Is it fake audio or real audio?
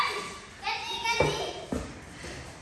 real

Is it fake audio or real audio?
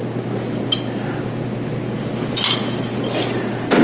real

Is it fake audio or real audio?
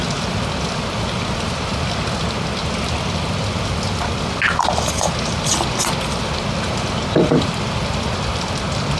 real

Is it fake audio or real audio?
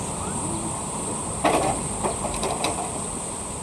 fake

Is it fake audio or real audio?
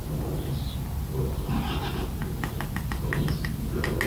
real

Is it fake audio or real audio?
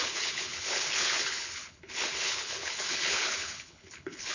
fake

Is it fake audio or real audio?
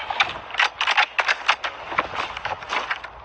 real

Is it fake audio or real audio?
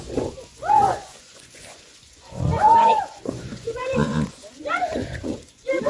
fake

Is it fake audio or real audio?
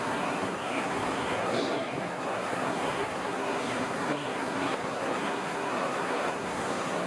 fake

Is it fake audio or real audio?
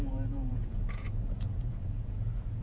fake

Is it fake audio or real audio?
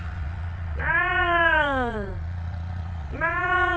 fake